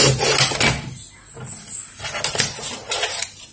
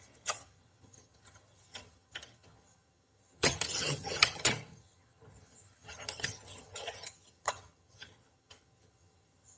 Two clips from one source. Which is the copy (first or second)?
second